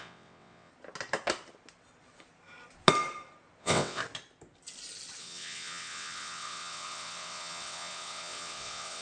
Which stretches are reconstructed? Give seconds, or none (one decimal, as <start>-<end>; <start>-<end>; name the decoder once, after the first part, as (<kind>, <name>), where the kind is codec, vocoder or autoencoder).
0.0-0.7 (vocoder, WaveNeXt); 3.6-4.0; 5.2-9.0